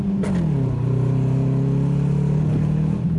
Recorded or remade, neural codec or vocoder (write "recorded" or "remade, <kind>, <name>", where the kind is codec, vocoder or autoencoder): recorded